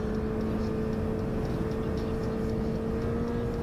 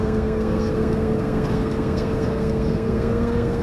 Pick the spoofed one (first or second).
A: second